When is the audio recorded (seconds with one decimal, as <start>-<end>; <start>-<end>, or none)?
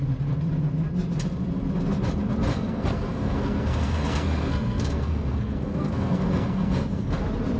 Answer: 0.0-2.5; 7.1-7.6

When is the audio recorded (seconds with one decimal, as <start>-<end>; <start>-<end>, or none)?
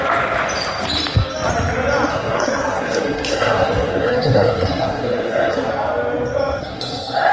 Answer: 0.0-2.1; 5.7-6.6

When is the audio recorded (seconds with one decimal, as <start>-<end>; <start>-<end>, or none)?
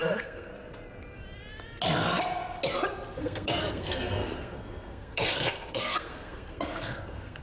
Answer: 0.5-3.2